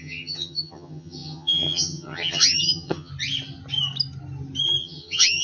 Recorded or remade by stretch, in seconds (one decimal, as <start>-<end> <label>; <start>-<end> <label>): 0.0-3.1 remade; 3.1-4.8 recorded; 4.8-5.4 remade